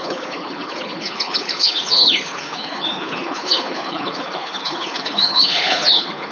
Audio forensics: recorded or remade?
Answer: remade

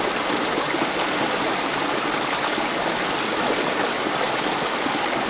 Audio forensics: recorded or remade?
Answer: recorded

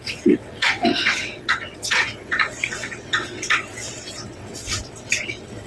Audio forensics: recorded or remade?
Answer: remade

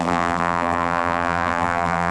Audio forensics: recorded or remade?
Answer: remade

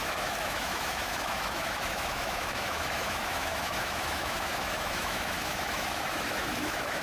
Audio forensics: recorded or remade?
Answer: remade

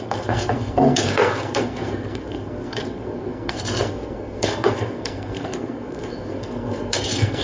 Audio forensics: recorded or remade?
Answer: remade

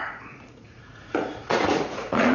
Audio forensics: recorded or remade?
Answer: remade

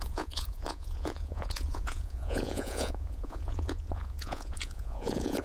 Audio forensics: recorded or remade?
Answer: remade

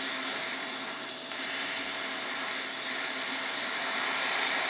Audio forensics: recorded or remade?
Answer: remade